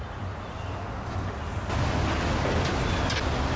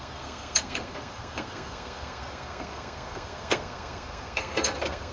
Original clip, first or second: first